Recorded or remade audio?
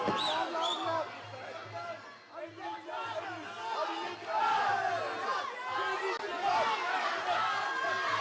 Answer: recorded